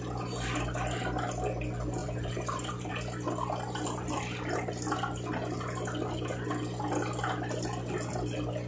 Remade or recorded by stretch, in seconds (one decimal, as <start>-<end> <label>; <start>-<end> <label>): 0.0-2.0 recorded; 2.0-2.9 remade; 2.9-8.7 recorded